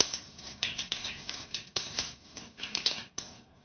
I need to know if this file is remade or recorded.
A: remade